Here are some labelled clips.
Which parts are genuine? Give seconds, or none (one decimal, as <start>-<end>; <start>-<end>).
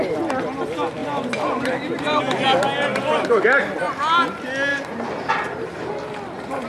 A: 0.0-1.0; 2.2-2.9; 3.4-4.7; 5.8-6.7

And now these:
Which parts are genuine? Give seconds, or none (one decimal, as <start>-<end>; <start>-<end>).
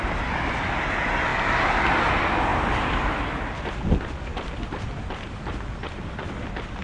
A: 0.0-2.5; 3.2-6.8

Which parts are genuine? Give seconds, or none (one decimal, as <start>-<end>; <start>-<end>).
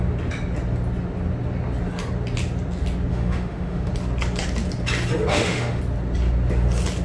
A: 0.0-3.1; 3.9-5.3; 5.8-7.0